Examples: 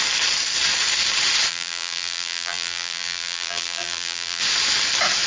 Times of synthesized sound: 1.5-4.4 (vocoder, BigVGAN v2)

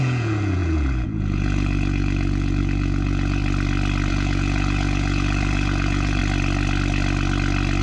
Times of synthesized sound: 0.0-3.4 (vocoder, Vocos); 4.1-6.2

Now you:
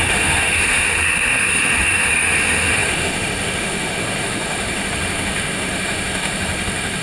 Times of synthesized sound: 0.0-7.0 (autoencoder, DAC-VAE)